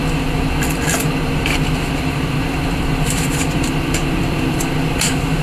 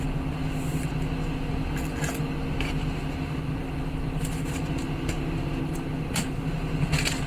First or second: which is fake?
first